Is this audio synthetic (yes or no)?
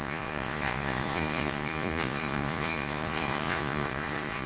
yes